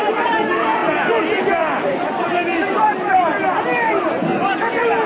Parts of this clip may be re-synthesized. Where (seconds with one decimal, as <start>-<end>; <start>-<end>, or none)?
0.8-3.2